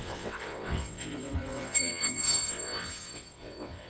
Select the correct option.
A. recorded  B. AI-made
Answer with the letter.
B